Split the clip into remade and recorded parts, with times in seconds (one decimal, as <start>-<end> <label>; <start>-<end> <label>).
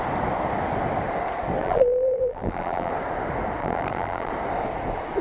0.0-1.6 recorded; 1.6-2.9 remade; 2.9-3.6 recorded; 3.6-4.3 remade; 4.3-5.2 recorded